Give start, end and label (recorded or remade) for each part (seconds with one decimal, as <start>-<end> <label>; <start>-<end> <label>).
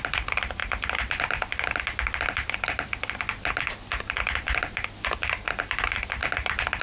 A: 0.0-6.8 recorded